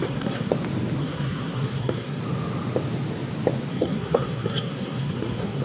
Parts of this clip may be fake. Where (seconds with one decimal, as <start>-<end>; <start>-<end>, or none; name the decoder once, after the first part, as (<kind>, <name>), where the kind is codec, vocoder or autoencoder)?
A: 0.0-0.5 (codec, SNAC); 1.0-2.2; 3.7-5.6